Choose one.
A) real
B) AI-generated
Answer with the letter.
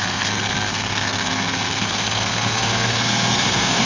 B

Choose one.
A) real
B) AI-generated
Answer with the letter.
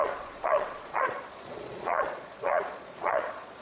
B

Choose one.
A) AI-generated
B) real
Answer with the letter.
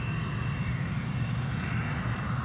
B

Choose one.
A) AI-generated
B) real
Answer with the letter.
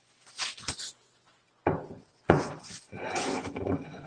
A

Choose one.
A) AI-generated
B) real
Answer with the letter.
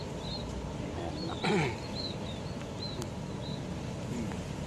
B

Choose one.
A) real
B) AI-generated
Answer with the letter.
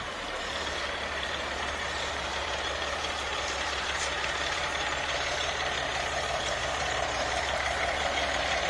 B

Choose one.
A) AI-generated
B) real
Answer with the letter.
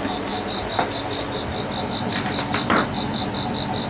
B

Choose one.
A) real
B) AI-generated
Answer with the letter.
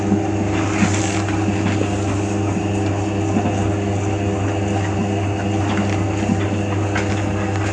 A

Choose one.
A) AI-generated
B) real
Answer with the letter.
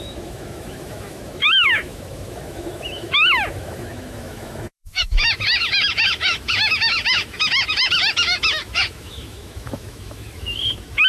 A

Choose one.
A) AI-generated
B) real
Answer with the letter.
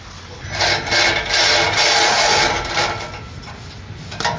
B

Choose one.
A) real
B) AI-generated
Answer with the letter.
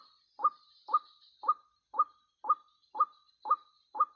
A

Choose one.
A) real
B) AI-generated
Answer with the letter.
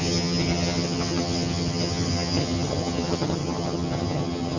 B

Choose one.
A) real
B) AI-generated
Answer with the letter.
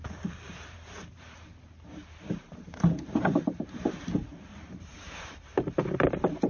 B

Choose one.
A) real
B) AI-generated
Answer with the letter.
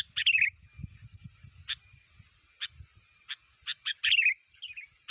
A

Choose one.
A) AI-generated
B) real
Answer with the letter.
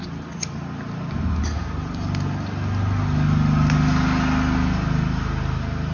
B